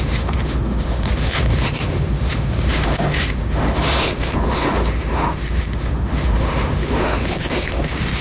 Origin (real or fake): fake